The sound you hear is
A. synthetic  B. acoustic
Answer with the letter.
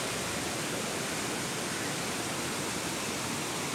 B